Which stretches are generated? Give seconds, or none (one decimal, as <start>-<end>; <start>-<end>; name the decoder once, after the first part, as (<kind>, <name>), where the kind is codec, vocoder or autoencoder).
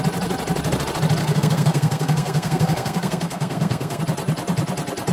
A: 1.2-4.0 (codec, SNAC)